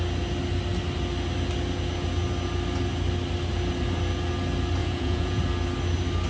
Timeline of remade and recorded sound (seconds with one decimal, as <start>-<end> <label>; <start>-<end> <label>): 0.0-4.8 recorded; 4.8-5.4 remade; 5.4-6.3 recorded